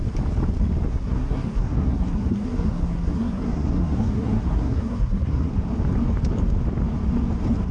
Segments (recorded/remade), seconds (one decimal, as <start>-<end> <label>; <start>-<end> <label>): 0.0-0.9 recorded; 0.9-5.5 remade; 5.5-7.7 recorded